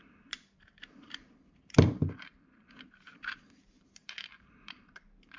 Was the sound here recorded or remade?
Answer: remade